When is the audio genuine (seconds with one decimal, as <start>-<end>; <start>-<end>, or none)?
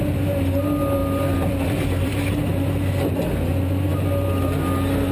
0.0-1.0; 2.3-5.1